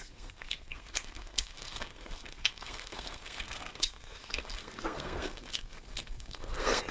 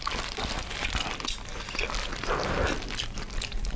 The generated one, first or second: first